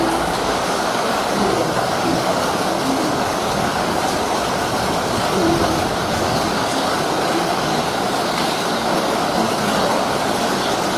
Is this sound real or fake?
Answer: fake